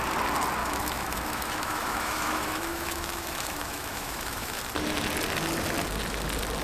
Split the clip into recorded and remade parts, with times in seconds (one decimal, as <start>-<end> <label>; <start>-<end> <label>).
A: 0.0-0.6 recorded; 0.6-4.6 remade; 4.6-6.6 recorded